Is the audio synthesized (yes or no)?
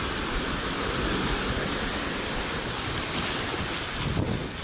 no